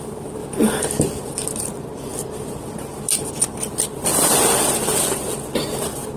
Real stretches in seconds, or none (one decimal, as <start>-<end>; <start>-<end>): 0.0-6.2